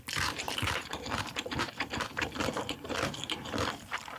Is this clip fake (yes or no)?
yes